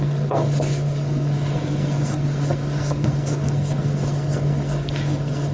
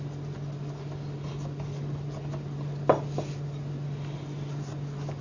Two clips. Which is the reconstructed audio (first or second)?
first